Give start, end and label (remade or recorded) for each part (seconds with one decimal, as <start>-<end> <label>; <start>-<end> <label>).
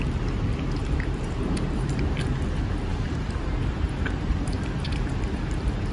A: 0.0-0.8 recorded; 0.8-2.0 remade; 2.0-2.9 recorded; 2.9-5.9 remade